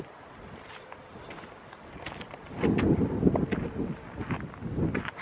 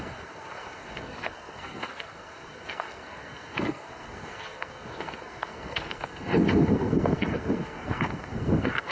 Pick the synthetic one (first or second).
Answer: second